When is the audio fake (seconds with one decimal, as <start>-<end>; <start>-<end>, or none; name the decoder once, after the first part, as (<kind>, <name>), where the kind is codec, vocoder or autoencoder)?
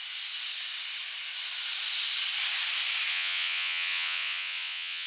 3.1-5.1 (vocoder, Vocos)